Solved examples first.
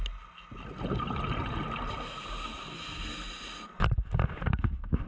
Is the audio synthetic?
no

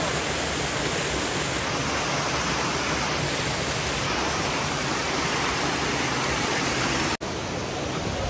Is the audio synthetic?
no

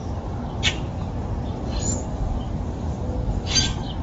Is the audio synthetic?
no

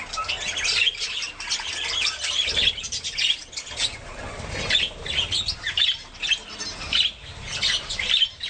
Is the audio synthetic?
no